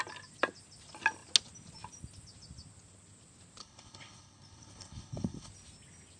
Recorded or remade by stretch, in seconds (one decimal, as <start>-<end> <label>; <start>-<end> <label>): 0.0-3.6 recorded; 3.6-5.5 remade; 5.5-6.2 recorded